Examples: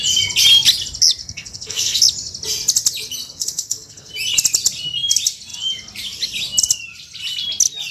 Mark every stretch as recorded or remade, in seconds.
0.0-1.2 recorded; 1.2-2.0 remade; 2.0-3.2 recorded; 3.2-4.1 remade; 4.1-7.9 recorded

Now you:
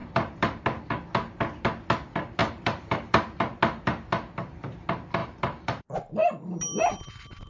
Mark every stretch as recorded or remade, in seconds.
0.0-0.6 remade; 0.6-2.4 recorded; 2.4-3.6 remade; 3.6-5.2 recorded; 5.2-5.8 remade; 5.8-6.2 recorded; 6.2-7.5 remade

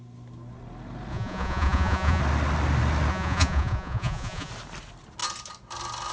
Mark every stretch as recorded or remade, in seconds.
0.0-1.1 recorded; 1.1-2.2 remade; 2.2-3.1 recorded; 3.1-4.5 remade; 4.5-6.1 recorded

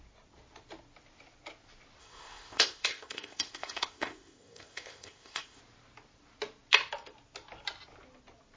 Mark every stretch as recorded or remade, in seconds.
0.0-2.0 recorded; 2.0-5.6 remade; 5.6-8.6 recorded